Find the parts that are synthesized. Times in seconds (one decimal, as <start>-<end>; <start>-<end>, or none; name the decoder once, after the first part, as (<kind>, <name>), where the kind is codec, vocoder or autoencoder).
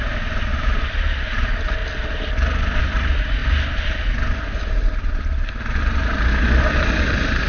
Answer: 0.0-0.5 (vocoder, BigVGAN v2); 1.2-1.8; 2.8-3.4; 5.8-7.5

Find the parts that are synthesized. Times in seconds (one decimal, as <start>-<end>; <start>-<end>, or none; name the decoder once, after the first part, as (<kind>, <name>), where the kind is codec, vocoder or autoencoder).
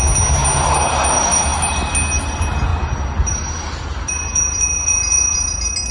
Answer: 2.7-4.9 (vocoder, BigVGAN v2)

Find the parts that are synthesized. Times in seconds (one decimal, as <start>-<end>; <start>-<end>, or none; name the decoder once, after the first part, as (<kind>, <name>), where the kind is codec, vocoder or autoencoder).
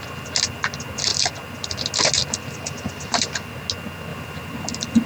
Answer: 1.1-1.8 (vocoder, BigVGAN v2); 2.2-3.6; 4.1-5.1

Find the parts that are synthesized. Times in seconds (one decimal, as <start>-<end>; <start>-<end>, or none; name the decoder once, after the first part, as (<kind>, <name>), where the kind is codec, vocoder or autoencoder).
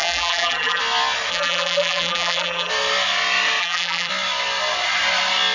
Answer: 0.0-0.8 (vocoder, BigVGAN v2); 1.3-2.7; 3.6-4.1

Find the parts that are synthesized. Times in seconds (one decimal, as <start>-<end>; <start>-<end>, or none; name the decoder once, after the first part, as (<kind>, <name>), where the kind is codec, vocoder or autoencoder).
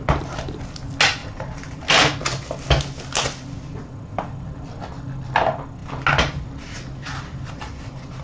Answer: 1.2-1.8 (vocoder, BigVGAN v2)